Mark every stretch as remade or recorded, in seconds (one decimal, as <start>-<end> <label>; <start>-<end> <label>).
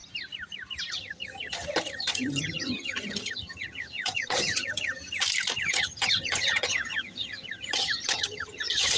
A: 0.0-0.9 recorded; 0.9-5.0 remade; 5.0-5.6 recorded; 5.6-9.0 remade